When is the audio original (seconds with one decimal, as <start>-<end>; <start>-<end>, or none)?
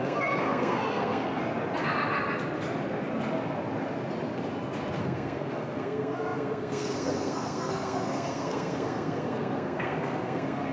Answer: 1.4-5.0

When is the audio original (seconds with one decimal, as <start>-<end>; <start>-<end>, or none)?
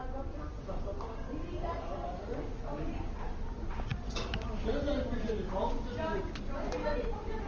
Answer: 0.0-7.5